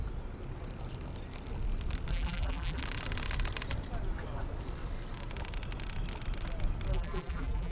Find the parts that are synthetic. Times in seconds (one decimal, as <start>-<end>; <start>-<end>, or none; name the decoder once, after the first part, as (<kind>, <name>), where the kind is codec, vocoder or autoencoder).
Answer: 2.1-2.8 (vocoder, BigVGAN v2); 6.9-7.7

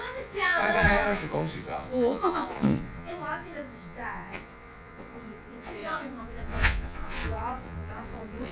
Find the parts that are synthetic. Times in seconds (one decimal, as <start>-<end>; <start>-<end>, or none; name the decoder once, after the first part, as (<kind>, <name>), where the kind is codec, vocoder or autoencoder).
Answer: 0.0-8.5 (vocoder, Vocos)

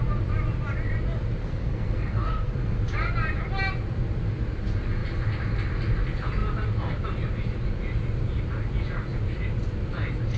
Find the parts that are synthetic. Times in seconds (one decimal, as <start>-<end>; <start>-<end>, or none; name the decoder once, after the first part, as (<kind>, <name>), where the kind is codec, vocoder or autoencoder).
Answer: 1.4-2.8 (codec, SNAC)

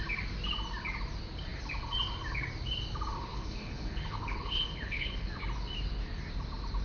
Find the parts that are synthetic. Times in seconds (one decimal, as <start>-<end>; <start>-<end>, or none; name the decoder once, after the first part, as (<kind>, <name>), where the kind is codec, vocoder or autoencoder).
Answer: 3.3-5.3 (codec, HILCodec)